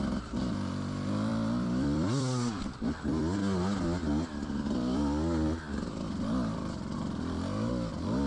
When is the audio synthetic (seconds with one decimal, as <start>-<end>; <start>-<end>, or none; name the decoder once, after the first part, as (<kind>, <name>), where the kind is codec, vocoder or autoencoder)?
1.3-3.2 (vocoder, BigVGAN v2); 4.0-7.7